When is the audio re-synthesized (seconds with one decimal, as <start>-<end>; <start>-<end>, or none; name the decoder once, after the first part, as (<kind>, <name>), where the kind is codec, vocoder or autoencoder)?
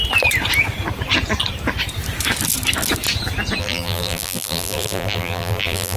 3.6-6.0 (vocoder, BigVGAN v2)